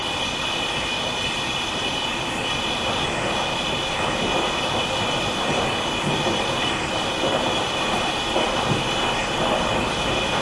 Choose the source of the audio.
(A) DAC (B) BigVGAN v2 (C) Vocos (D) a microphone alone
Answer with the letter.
D